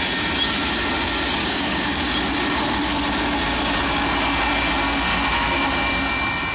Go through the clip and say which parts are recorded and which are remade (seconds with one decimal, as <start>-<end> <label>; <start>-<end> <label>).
0.0-1.4 recorded; 1.4-2.0 remade; 2.0-6.5 recorded